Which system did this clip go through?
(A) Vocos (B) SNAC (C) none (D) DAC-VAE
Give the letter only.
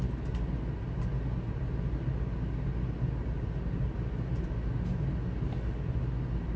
C